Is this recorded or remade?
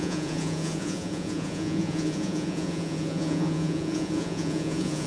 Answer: remade